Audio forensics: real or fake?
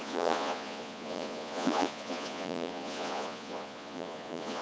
fake